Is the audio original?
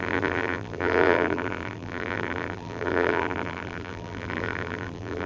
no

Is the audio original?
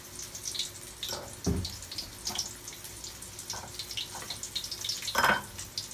yes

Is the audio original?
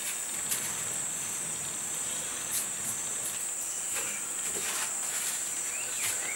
yes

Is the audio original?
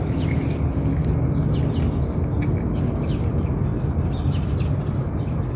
yes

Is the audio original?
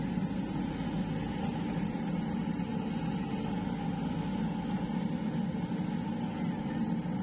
yes